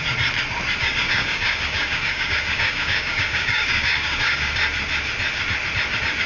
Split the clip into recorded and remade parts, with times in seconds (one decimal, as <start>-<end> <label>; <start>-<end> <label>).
0.0-0.8 recorded; 0.8-4.6 remade; 4.6-6.3 recorded